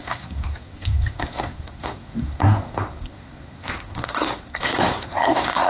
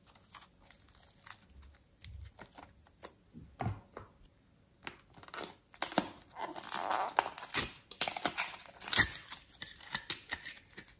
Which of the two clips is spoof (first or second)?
first